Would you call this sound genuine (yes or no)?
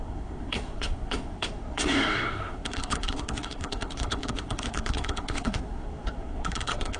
no